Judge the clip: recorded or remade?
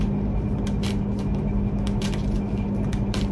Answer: recorded